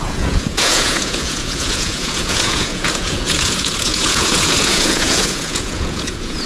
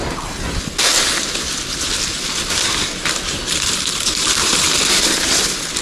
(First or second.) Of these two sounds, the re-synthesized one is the first